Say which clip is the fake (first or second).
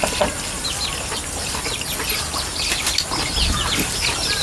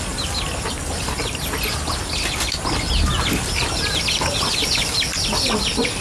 first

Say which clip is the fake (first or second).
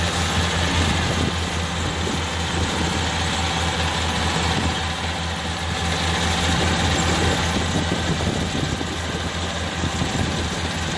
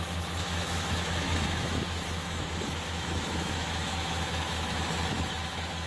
second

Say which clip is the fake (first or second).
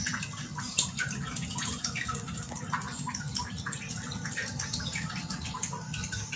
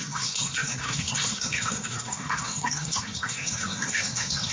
second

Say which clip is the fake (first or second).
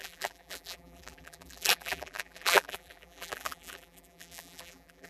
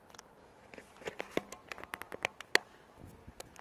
first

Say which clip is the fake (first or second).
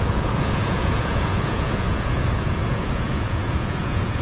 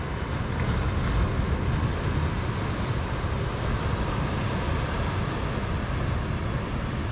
first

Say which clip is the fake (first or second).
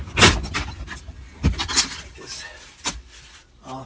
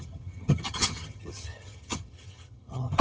second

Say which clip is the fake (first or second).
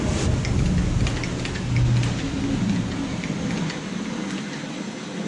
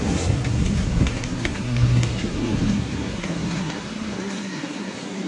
second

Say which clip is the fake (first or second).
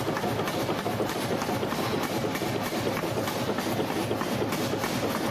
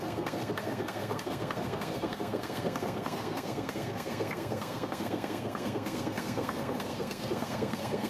second